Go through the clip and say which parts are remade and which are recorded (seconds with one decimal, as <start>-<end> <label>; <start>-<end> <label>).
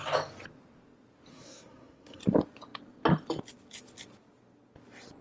0.0-1.3 recorded; 1.3-2.2 remade; 2.2-5.2 recorded